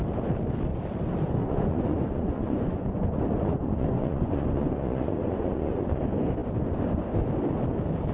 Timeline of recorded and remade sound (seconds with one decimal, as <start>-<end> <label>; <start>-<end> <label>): 0.0-1.4 recorded; 1.4-6.0 remade; 6.0-8.1 recorded